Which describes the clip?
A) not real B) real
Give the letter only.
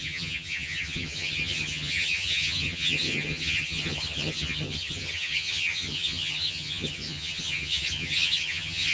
A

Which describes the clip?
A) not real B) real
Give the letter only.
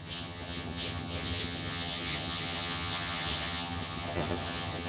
A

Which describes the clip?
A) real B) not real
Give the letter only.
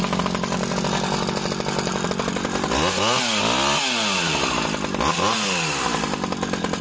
A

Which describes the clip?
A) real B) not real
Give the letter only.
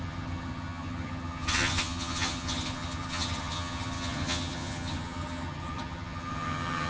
B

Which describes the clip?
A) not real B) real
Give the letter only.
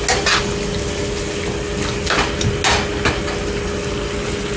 B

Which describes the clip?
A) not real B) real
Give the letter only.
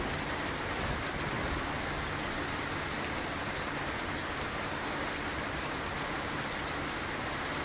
B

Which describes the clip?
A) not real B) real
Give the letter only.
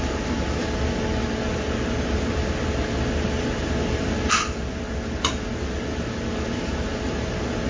B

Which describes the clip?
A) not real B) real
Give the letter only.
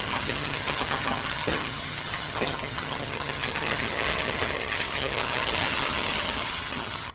A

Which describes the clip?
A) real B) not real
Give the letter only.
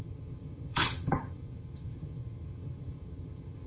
B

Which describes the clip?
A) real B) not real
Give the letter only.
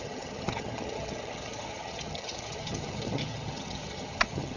B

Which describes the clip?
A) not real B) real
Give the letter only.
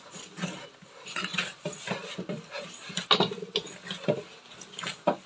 B